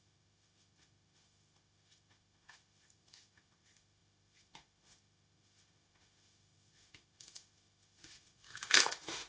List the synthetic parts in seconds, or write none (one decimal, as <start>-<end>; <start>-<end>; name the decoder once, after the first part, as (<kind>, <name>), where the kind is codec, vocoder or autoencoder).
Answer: 0.0-9.3 (autoencoder, DAC-VAE)